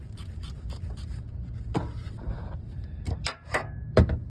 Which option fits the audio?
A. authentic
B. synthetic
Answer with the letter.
B